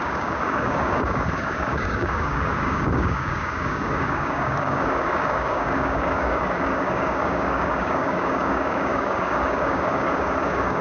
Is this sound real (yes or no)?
no